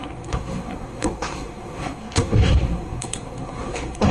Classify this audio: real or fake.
fake